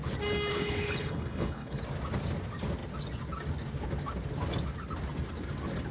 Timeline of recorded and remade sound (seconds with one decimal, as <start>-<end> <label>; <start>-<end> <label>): 0.0-0.5 recorded; 0.5-1.8 remade; 1.8-5.9 recorded